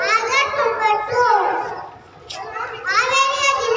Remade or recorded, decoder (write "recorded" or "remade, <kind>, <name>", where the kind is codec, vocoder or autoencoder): recorded